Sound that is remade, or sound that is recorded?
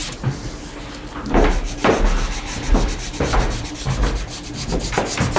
recorded